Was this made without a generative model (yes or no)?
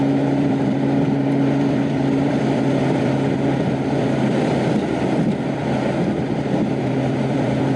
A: no